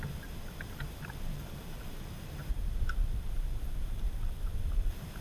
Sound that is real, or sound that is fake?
fake